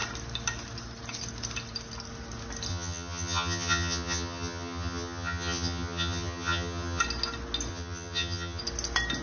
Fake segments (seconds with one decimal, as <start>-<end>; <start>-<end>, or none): 2.7-7.0; 7.7-8.6